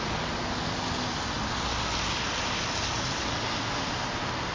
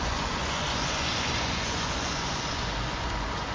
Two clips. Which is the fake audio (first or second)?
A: second